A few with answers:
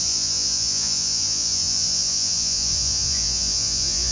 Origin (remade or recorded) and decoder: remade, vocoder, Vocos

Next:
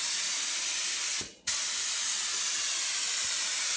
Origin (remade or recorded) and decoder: recorded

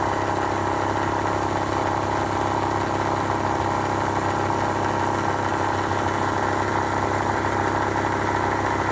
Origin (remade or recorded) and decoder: recorded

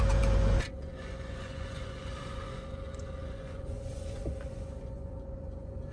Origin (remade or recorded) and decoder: remade, vocoder, Vocos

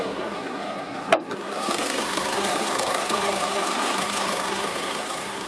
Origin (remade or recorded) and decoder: remade, codec, SNAC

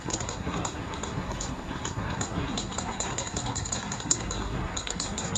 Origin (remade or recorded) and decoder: remade, codec, SNAC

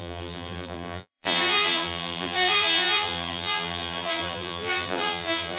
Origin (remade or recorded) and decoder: remade, vocoder, BigVGAN v2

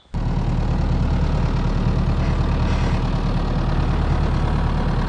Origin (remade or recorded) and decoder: recorded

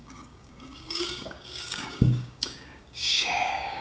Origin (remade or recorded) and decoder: remade, codec, DAC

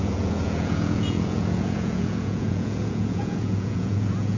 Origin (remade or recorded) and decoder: remade, vocoder, Vocos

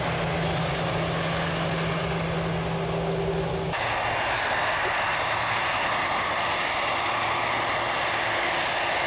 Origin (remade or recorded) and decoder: recorded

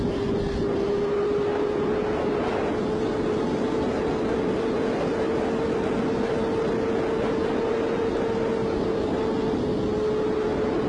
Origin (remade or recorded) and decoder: recorded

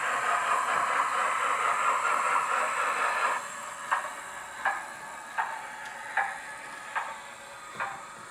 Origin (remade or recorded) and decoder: recorded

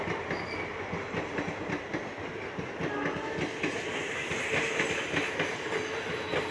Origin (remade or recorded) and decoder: recorded